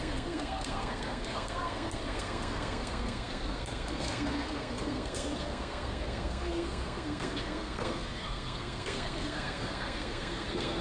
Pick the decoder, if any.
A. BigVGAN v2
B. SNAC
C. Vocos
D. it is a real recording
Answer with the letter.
B